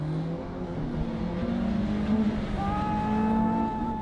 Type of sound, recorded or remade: recorded